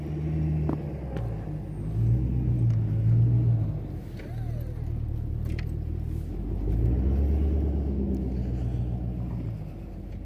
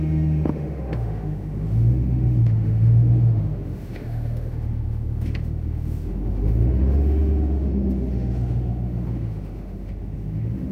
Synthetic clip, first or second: second